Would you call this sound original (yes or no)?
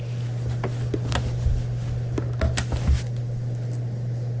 yes